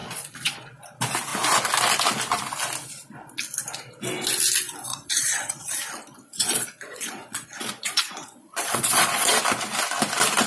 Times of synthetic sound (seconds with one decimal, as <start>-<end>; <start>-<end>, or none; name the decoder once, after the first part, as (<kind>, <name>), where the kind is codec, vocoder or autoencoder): 0.0-0.6 (vocoder, Vocos); 4.9-5.7; 6.2-9.3